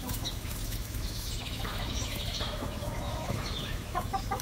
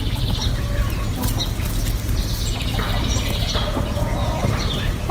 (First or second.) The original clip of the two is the second